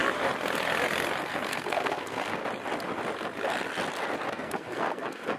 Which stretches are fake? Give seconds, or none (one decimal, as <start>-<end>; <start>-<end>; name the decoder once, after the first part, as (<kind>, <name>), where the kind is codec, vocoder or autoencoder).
1.3-2.4 (codec, SNAC); 4.3-5.4